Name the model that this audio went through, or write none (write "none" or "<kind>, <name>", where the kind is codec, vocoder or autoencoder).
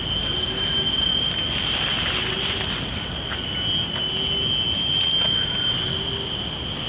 none